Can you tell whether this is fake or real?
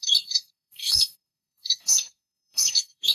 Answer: fake